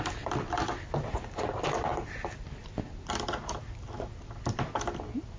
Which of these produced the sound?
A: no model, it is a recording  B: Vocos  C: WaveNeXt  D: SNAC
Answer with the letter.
A